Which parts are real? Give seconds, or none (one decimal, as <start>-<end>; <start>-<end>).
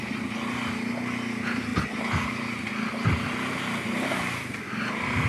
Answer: 0.0-5.3